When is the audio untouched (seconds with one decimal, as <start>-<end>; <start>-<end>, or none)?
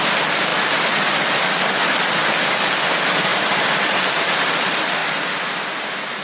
0.0-6.2